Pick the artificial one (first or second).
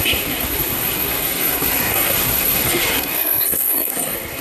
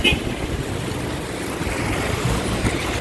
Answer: first